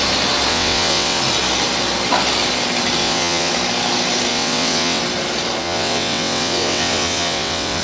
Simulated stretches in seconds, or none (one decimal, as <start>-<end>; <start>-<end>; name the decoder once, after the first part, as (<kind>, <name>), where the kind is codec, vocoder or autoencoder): 0.5-1.2 (vocoder, WaveNeXt); 3.0-3.5; 4.3-5.0; 5.6-7.8

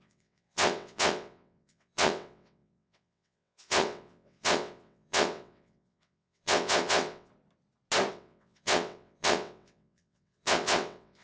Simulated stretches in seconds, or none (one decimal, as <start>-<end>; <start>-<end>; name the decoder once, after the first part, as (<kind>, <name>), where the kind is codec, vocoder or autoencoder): 0.0-7.3 (vocoder, WaveNeXt); 8.1-11.2